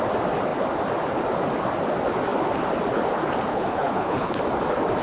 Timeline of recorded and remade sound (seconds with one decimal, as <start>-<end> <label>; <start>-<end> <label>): 0.0-3.5 recorded; 3.5-4.3 remade; 4.3-5.0 recorded